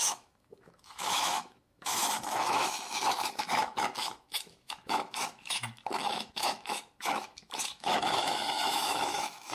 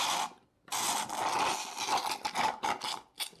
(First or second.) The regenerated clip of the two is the first